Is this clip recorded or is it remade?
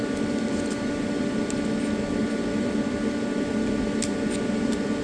recorded